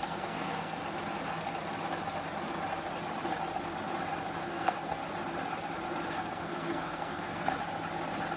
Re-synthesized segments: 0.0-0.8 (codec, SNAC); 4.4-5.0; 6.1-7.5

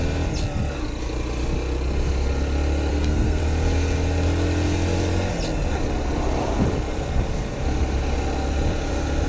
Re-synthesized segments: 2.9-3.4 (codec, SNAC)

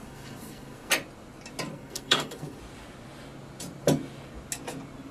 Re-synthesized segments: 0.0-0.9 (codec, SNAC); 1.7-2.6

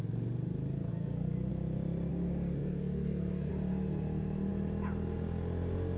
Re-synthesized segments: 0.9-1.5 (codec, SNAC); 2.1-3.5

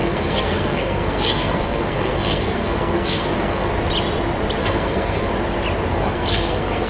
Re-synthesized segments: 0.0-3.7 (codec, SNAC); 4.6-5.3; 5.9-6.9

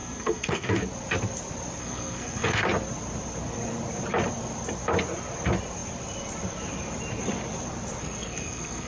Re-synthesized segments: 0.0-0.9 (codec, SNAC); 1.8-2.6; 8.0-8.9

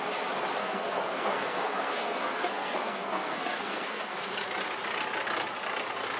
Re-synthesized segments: 0.6-4.3 (codec, SNAC)